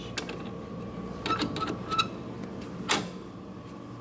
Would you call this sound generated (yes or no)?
no